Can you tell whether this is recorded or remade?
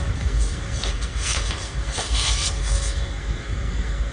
remade